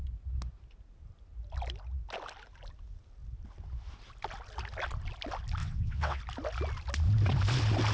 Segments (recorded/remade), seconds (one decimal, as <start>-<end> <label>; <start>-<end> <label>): 0.0-5.6 recorded; 5.6-6.2 remade; 6.2-7.9 recorded